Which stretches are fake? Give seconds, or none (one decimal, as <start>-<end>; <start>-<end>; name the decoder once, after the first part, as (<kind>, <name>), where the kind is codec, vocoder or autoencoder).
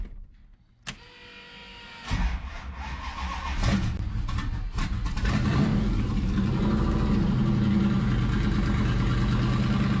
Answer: none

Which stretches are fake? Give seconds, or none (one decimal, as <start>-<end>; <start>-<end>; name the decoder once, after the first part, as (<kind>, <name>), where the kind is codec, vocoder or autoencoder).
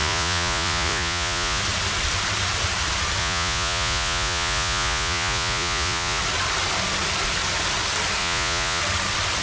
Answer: 0.0-1.6 (vocoder, Vocos); 3.2-6.2; 8.2-8.8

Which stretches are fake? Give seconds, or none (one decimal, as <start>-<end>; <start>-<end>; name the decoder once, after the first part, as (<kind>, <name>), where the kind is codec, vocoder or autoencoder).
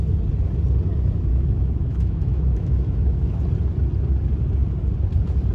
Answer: 1.3-3.4 (autoencoder, DAC-VAE)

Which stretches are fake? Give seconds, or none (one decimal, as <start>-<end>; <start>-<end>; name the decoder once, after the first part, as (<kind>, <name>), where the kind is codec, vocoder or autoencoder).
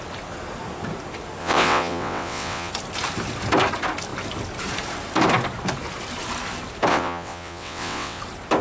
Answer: 1.4-2.7 (vocoder, WaveNeXt); 6.9-8.2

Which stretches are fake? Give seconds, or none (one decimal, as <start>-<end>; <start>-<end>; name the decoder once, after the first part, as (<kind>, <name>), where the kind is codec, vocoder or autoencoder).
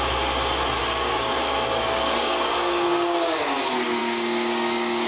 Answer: 0.8-3.6 (codec, DAC); 4.0-5.1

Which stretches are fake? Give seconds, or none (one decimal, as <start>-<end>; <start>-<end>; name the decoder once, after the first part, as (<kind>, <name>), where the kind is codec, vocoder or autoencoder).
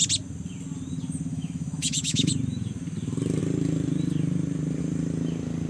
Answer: 1.3-2.3 (autoencoder, DAC-VAE)